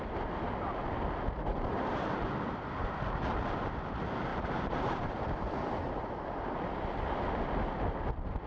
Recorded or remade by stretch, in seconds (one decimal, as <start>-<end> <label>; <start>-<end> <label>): 0.0-1.5 recorded; 1.5-2.3 remade; 2.3-4.3 recorded; 4.3-6.2 remade; 6.2-8.5 recorded